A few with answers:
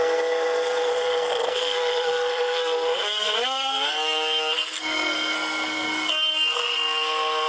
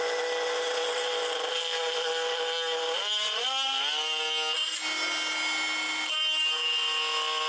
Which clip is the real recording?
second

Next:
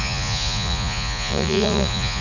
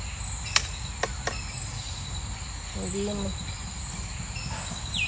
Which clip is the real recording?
second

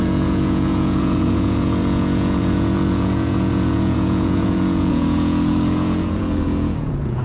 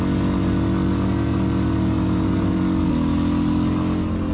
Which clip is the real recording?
second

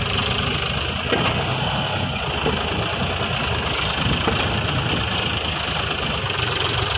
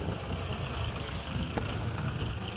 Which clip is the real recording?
first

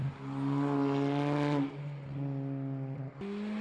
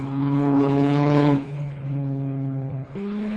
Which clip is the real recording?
first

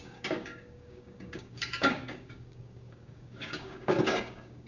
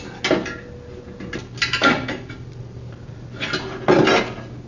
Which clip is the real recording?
second